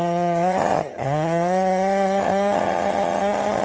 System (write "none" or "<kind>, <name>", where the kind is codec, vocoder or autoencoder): vocoder, HiFi-GAN